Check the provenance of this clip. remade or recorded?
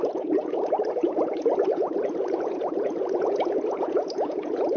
remade